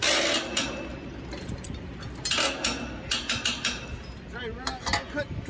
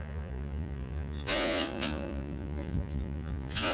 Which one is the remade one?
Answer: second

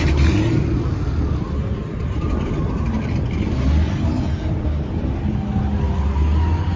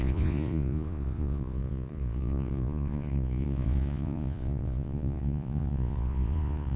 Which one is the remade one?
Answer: second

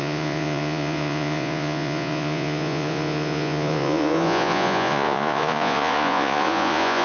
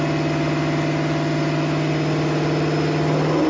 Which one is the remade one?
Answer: first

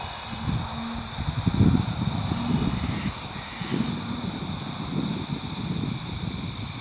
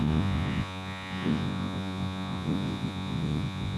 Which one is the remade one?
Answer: second